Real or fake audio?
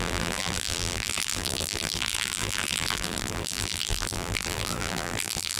fake